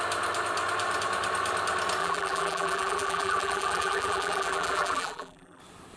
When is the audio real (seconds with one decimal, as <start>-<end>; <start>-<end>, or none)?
0.0-2.0; 5.6-6.0